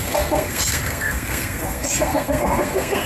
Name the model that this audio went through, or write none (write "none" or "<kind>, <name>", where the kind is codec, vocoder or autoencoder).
codec, SNAC